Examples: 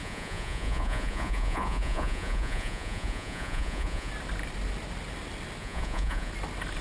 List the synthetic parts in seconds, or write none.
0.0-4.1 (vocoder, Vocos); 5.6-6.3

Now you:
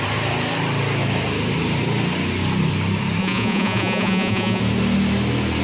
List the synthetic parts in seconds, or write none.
3.2-4.6 (vocoder, Vocos)

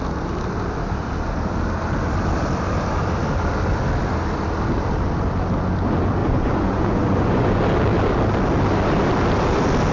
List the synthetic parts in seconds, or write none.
6.2-7.6 (vocoder, Vocos)

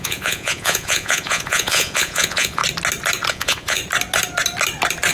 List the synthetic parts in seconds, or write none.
0.0-2.6 (vocoder, Vocos); 3.3-3.8

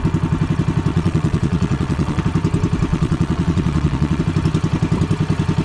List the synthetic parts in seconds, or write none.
0.9-2.2 (vocoder, Vocos); 2.9-4.2

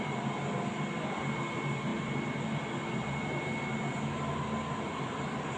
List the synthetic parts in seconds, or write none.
none